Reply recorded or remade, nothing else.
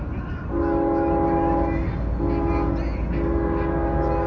recorded